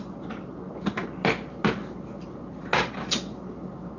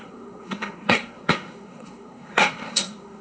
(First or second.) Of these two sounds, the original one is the first